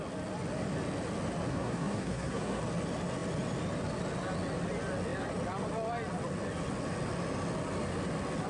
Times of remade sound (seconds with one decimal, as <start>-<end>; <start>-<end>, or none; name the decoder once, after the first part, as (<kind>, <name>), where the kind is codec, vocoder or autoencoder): 1.5-2.6 (codec, SNAC)